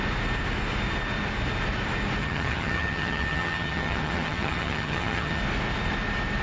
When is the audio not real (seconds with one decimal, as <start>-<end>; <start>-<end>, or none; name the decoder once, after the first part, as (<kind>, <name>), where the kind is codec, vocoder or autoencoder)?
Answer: 2.2-5.4 (vocoder, HiFi-GAN)